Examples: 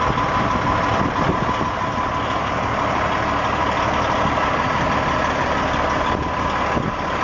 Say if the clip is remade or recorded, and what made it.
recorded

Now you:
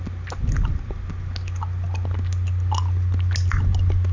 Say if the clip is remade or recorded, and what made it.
recorded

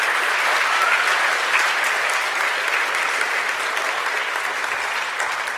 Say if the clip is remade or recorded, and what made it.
recorded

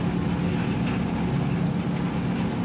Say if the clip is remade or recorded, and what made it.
recorded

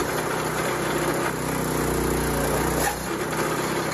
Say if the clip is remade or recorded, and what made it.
recorded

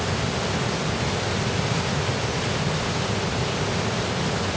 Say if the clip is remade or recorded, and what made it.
recorded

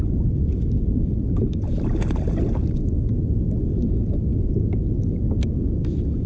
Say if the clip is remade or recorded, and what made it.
recorded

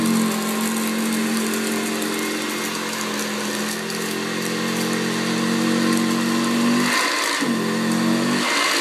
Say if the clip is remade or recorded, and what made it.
recorded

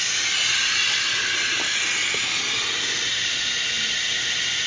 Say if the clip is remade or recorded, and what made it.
recorded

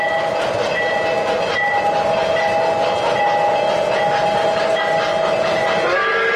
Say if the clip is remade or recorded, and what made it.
recorded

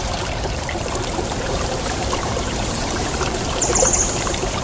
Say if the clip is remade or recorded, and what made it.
remade, vocoder, BigVGAN v2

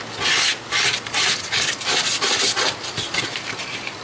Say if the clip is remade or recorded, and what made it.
recorded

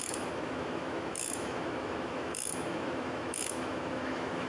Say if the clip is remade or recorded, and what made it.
remade, autoencoder, DAC-VAE